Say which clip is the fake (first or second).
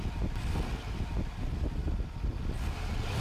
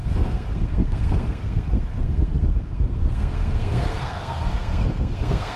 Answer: second